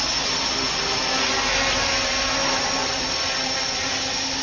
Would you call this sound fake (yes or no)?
no